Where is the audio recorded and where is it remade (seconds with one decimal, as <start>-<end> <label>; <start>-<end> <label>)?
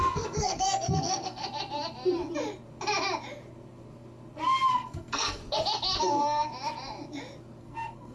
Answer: 0.0-1.4 remade; 1.4-4.7 recorded; 4.7-5.4 remade; 5.4-6.0 recorded; 6.0-6.5 remade; 6.5-7.6 recorded; 7.6-8.1 remade